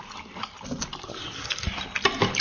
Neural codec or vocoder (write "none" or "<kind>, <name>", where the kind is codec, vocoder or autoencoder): none